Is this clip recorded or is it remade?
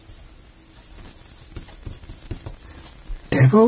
recorded